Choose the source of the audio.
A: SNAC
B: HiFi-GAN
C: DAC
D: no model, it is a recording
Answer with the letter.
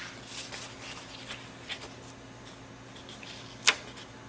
D